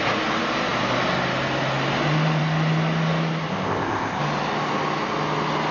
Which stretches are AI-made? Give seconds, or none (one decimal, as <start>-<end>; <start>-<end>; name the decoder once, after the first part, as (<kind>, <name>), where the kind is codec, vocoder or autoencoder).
3.5-4.2 (codec, ZipCodec)